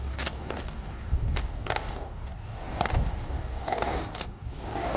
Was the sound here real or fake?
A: fake